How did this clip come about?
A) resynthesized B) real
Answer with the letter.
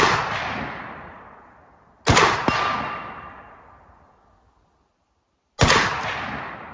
B